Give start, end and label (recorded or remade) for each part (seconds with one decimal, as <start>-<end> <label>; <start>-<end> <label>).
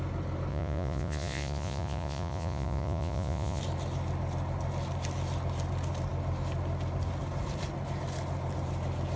0.0-0.5 recorded; 0.5-3.6 remade; 3.6-9.2 recorded